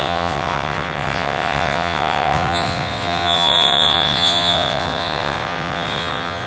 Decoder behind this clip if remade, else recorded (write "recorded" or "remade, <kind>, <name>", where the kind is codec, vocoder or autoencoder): remade, vocoder, WaveNeXt